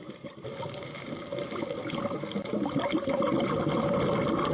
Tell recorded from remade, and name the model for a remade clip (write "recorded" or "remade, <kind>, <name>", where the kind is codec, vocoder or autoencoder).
recorded